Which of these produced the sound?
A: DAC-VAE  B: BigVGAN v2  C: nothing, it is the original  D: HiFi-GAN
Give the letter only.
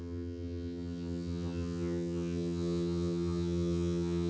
D